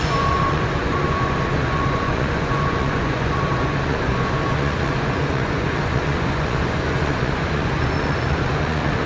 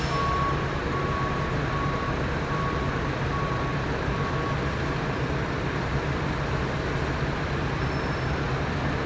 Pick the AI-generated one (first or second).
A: first